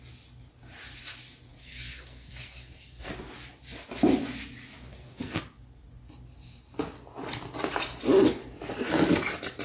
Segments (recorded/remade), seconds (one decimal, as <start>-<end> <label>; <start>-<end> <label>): 0.0-1.6 recorded; 1.6-3.1 remade; 3.1-4.9 recorded; 4.9-5.4 remade; 5.4-9.6 recorded